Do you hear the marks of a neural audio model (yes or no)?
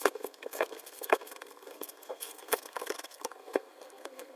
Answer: yes